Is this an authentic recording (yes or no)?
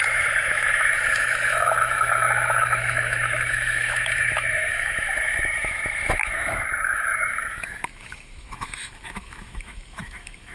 no